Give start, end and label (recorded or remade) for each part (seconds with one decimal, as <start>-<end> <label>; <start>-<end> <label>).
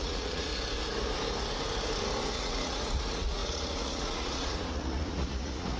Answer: 0.0-0.5 remade; 0.5-2.3 recorded; 2.3-5.8 remade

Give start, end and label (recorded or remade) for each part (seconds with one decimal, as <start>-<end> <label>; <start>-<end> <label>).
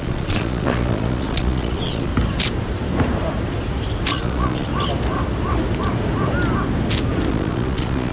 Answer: 0.0-2.1 remade; 2.1-4.1 recorded; 4.1-4.7 remade; 4.7-7.3 recorded; 7.3-8.1 remade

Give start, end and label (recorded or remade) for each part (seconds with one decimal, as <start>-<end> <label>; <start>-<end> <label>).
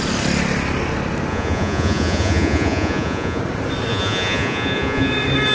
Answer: 0.0-1.3 recorded; 1.3-3.4 remade; 3.4-3.9 recorded; 3.9-5.1 remade; 5.1-5.5 recorded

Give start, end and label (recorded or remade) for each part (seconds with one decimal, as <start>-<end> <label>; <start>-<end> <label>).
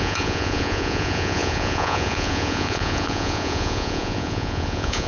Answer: 0.0-5.1 remade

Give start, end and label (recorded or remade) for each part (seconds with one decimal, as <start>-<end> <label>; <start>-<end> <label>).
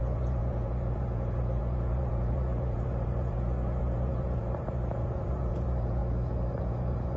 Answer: 0.0-6.0 remade; 6.0-6.6 recorded; 6.6-7.2 remade